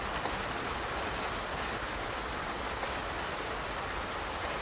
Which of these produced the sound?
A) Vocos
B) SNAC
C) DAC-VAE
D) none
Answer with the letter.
D